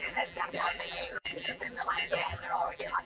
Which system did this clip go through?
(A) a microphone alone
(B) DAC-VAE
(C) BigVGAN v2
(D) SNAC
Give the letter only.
C